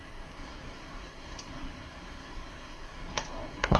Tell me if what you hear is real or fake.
fake